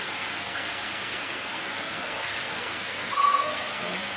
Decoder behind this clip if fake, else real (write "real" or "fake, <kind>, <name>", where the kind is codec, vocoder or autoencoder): fake, codec, SNAC